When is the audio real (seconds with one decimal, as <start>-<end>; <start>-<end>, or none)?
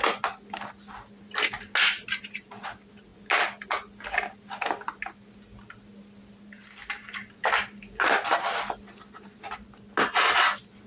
0.0-10.9